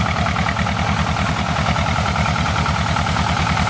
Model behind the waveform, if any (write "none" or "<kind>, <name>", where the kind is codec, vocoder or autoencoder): none